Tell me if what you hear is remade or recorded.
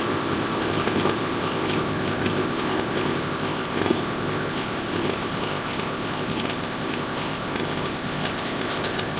remade